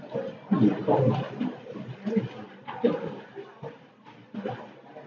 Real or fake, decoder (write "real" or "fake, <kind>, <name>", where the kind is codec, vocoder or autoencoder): real